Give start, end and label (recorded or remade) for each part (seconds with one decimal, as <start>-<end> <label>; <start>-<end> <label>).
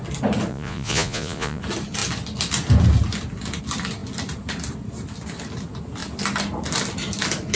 0.0-0.5 recorded; 0.5-1.6 remade; 1.6-7.6 recorded